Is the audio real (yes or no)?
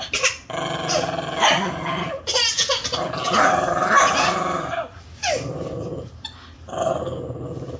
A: yes